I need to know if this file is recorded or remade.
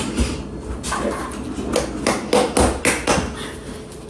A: recorded